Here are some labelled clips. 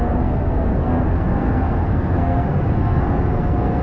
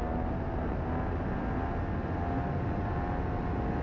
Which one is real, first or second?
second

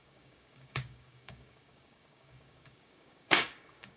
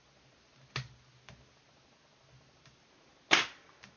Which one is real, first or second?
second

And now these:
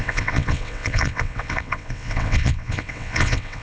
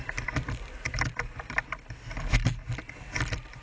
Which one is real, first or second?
second